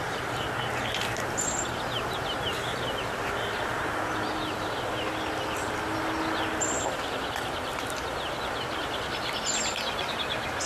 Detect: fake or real real